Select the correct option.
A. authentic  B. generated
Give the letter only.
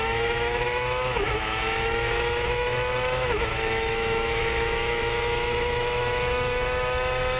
B